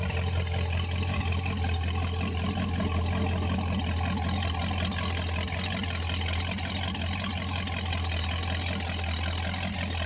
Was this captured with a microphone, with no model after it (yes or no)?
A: yes